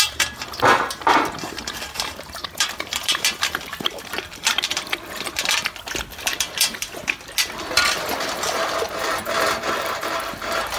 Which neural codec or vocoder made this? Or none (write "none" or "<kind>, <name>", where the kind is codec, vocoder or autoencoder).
vocoder, BigVGAN v2